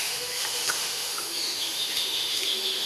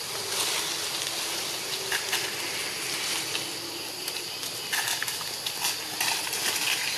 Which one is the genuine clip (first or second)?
second